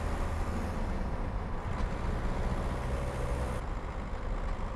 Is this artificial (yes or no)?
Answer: no